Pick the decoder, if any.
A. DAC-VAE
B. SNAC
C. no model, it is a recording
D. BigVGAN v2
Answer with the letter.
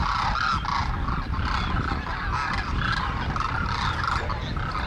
C